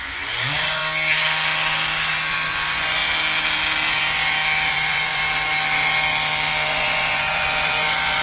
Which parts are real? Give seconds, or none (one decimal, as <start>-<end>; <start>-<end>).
0.8-2.3; 3.0-4.7; 5.2-6.7